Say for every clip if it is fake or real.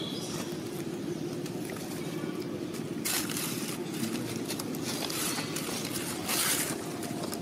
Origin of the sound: real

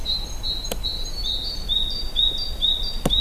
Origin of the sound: real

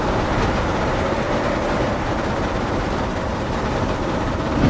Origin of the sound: real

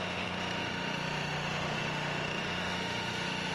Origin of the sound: fake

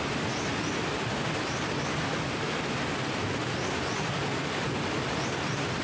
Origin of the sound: real